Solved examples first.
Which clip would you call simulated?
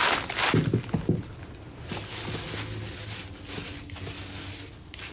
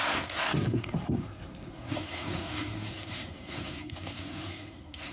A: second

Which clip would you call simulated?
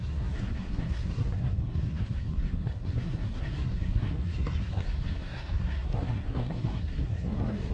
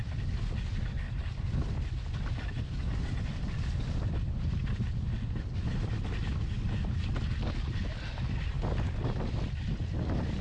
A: first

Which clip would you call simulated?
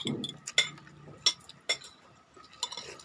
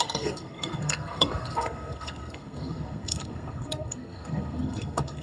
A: second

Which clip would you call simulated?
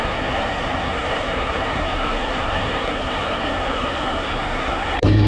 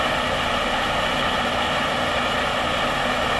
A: first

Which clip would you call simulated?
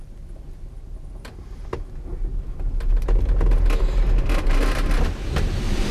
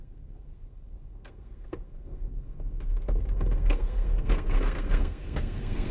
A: second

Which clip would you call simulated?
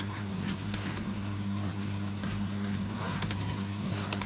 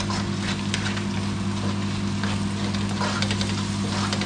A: first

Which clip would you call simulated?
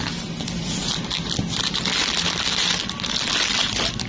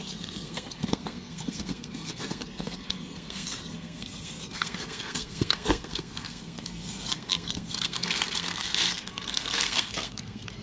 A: second